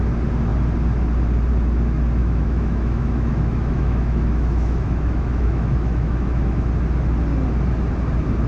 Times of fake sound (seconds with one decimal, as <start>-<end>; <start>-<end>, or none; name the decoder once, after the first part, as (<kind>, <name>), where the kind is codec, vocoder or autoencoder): 2.2-6.6 (autoencoder, DAC-VAE)

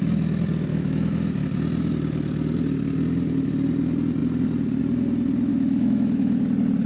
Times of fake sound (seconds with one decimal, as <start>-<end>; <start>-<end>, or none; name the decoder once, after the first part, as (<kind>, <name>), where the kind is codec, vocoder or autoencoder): 0.7-1.4 (autoencoder, DAC-VAE); 5.5-6.4

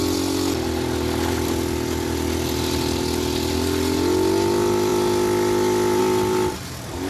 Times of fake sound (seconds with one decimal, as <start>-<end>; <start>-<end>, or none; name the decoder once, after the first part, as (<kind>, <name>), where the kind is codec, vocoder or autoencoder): none

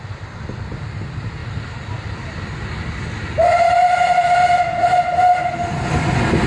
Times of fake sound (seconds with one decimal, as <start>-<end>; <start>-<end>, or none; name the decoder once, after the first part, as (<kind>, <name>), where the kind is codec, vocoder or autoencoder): none

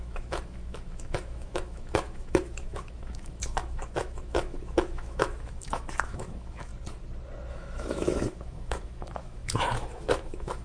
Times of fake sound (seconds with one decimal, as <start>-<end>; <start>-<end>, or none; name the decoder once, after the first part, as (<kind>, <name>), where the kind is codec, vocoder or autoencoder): 0.0-6.7 (autoencoder, DAC-VAE); 7.5-10.6

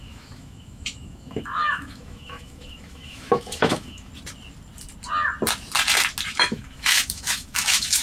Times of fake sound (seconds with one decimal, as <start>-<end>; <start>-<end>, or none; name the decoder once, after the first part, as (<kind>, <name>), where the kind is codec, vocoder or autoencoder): 0.0-4.1 (autoencoder, DAC-VAE); 6.3-8.0